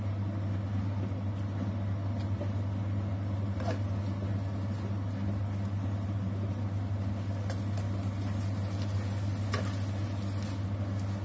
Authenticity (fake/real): real